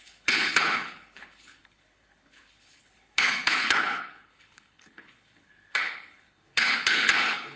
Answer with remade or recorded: remade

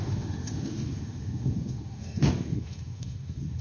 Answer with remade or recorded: remade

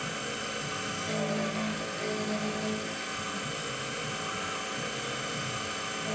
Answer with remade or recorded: recorded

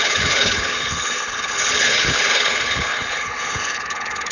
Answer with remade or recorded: remade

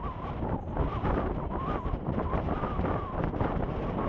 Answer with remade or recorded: recorded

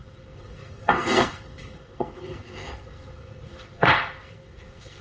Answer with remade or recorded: remade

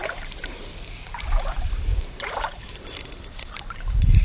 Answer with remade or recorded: remade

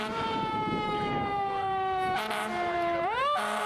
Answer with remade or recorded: remade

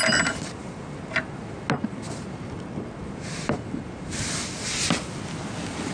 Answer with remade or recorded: recorded